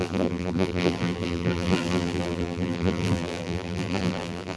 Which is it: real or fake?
fake